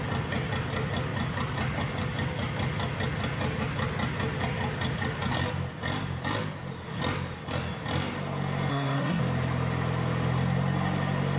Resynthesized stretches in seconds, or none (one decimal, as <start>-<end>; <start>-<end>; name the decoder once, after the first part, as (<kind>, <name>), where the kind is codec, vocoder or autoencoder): 8.7-9.2 (codec, SNAC)